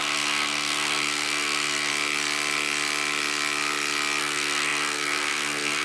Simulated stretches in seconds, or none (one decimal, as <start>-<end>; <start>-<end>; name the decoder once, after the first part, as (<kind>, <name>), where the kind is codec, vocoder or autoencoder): 0.0-1.9 (codec, SNAC); 4.2-5.8